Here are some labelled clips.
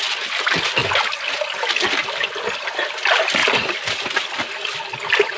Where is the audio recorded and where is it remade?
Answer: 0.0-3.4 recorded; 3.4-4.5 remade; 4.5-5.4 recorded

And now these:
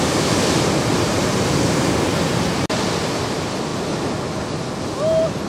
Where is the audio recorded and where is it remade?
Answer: 0.0-0.9 recorded; 0.9-2.7 remade; 2.7-5.5 recorded

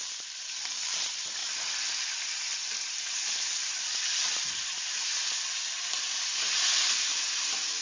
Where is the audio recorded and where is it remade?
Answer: 0.0-1.4 remade; 1.4-2.4 recorded; 2.4-5.1 remade; 5.1-6.8 recorded; 6.8-7.8 remade

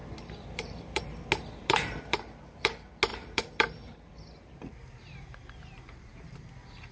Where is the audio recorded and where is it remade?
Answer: 0.0-1.0 remade; 1.0-1.6 recorded; 1.6-2.7 remade; 2.7-3.1 recorded; 3.1-6.4 remade; 6.4-6.9 recorded

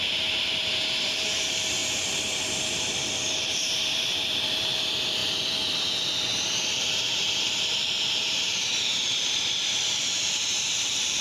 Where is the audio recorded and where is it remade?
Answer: 0.0-11.2 remade

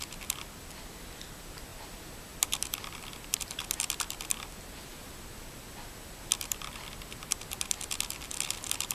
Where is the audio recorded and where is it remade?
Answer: 0.0-8.9 recorded

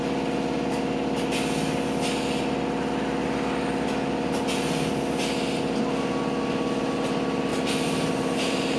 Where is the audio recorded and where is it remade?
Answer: 0.0-7.5 recorded; 7.5-8.8 remade